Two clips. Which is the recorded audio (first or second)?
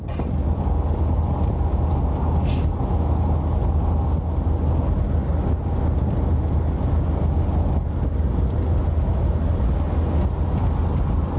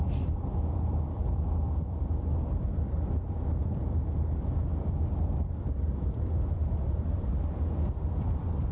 first